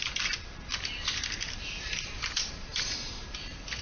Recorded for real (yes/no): no